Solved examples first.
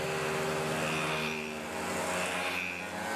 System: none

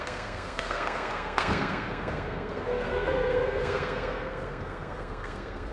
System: codec, SNAC